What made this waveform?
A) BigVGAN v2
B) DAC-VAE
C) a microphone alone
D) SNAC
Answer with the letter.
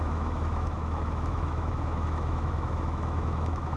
B